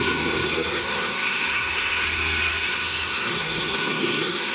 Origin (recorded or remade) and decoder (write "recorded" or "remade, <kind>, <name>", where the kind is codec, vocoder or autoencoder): remade, codec, SNAC